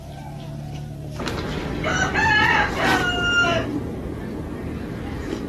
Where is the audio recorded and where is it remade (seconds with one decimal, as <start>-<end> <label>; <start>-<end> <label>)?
0.0-3.7 recorded; 3.7-4.5 remade; 4.5-5.5 recorded